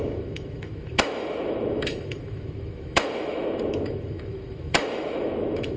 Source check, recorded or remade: remade